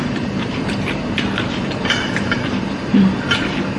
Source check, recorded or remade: remade